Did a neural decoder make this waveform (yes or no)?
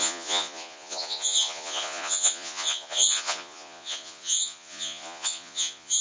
yes